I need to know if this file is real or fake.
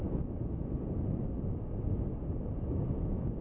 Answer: real